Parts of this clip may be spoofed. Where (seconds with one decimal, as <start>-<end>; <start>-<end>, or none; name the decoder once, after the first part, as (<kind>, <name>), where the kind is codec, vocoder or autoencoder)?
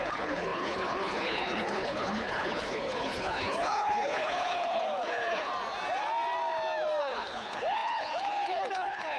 0.0-5.5 (codec, HILCodec); 7.0-9.2